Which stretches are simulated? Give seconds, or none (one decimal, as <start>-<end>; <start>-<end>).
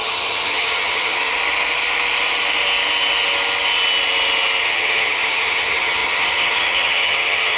0.0-1.3; 4.6-7.6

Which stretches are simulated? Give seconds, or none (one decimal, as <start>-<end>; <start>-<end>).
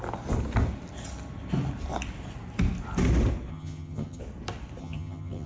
3.5-4.2; 4.8-5.5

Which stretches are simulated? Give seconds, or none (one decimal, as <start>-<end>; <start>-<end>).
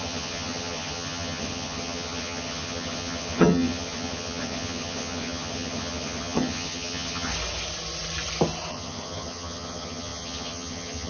0.0-7.3; 8.7-11.1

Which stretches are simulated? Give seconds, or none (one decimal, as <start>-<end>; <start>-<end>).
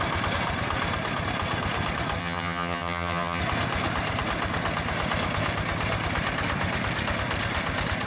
2.2-3.4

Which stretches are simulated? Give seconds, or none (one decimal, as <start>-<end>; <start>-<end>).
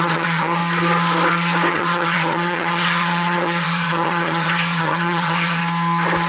0.0-0.6; 1.7-5.6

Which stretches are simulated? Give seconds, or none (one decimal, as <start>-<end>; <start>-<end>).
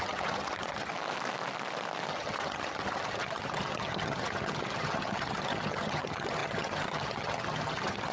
0.0-0.9; 2.1-8.1